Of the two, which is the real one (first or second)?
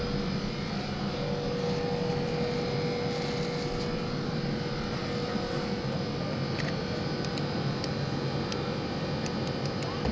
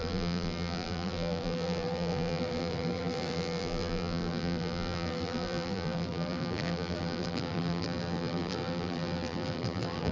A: first